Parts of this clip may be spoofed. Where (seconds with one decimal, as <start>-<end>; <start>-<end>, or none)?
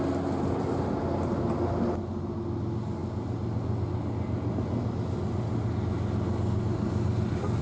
none